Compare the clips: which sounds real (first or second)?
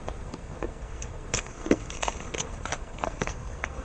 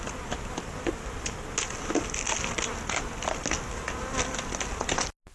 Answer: second